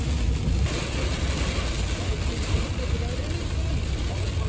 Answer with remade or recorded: recorded